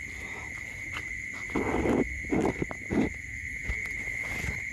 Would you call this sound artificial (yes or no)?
no